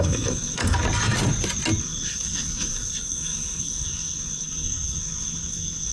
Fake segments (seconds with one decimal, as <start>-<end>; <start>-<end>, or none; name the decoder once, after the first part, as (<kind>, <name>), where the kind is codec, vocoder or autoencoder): 0.0-0.8 (codec, SNAC); 1.8-5.9